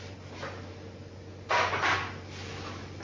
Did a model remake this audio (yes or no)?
no